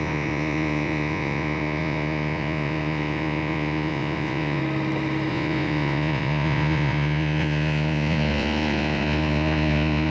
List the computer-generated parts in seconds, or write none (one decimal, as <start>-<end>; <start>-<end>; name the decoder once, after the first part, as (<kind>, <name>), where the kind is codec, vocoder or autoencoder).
0.0-4.6 (vocoder, Vocos); 5.3-10.1